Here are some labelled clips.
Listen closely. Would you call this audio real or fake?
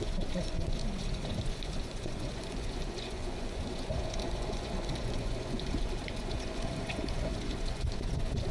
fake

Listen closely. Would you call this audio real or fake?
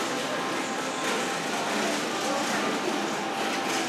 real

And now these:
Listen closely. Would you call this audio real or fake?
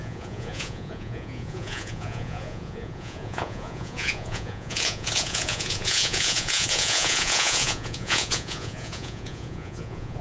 fake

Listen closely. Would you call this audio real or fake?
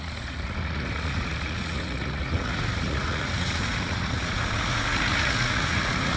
fake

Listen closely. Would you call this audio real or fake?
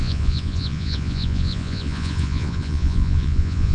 fake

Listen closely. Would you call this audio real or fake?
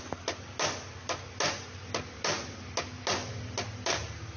real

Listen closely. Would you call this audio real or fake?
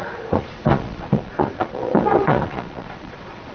fake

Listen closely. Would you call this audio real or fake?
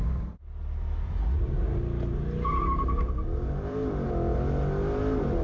real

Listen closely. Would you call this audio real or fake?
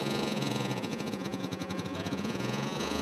fake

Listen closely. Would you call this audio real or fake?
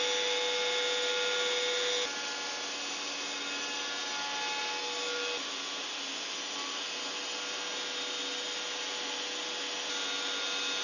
real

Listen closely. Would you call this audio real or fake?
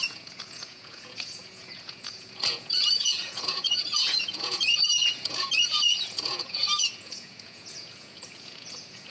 fake